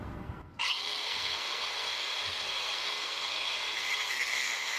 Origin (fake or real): fake